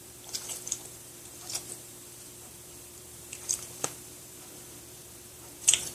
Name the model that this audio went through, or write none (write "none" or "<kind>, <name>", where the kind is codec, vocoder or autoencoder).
vocoder, BigVGAN v2